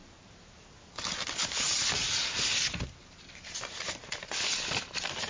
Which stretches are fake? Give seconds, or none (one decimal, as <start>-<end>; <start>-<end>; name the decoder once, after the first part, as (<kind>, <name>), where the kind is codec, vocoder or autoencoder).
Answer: none